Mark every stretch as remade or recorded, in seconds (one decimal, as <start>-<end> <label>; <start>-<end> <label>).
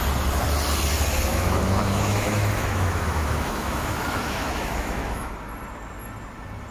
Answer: 0.0-1.3 recorded; 1.3-5.3 remade; 5.3-6.7 recorded